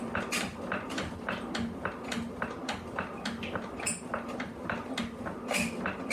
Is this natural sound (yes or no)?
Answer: yes